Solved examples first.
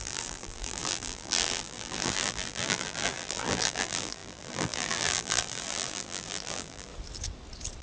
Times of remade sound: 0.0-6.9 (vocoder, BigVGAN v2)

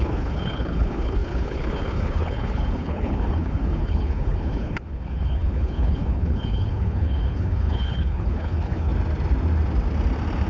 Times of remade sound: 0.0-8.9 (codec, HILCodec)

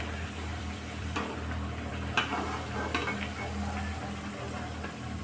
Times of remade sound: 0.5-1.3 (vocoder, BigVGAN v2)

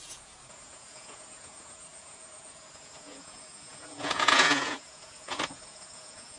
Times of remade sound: 0.0-6.4 (vocoder, Vocos)

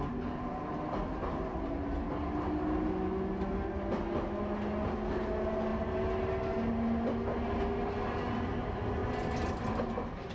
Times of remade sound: none

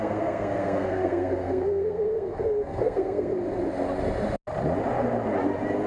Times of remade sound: 0.0-3.3 (codec, SNAC)

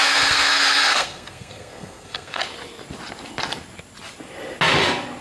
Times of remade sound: 0.0-2.4 (codec, SNAC)